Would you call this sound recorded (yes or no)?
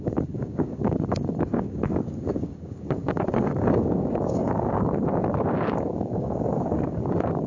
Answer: no